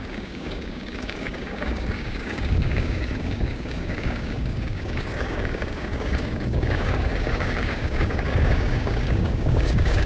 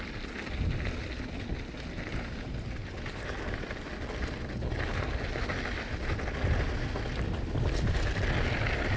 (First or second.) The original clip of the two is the second